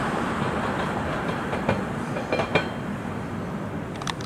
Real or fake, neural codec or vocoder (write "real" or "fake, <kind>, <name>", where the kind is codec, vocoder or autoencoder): real